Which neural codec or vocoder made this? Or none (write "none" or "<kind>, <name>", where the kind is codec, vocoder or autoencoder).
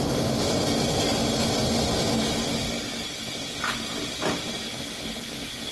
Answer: none